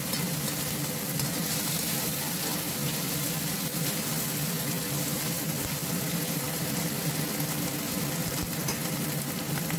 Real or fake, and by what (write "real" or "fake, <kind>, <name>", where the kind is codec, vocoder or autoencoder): real